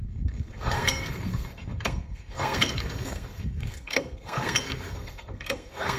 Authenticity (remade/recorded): remade